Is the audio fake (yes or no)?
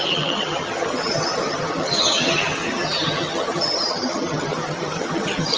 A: yes